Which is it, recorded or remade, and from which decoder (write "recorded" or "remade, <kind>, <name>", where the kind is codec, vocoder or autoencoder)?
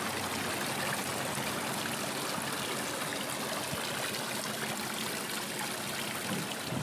recorded